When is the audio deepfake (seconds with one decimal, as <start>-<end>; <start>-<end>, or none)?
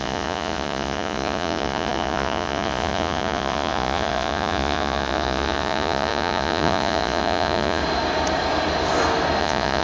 0.0-7.8; 9.4-9.8